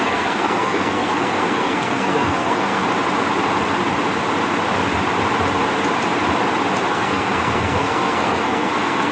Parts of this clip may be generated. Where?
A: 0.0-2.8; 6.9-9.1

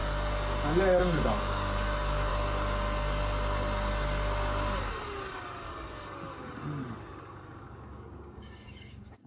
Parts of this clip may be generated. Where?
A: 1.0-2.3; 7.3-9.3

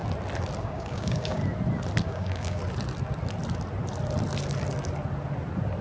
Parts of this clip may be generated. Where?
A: 0.6-1.4; 2.0-2.6

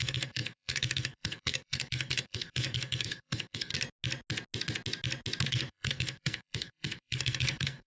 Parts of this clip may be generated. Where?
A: 0.0-3.7; 5.5-7.9

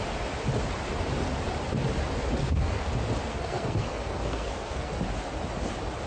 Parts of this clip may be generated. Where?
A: 2.4-2.9; 3.3-4.9

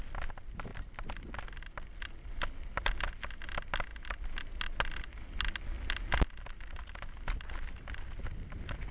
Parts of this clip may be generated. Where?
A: none